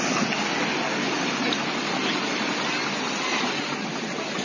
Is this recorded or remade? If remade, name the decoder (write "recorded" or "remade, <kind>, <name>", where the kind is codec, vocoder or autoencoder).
recorded